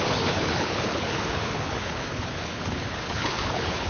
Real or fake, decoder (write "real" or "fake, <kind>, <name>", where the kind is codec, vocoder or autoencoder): fake, codec, HILCodec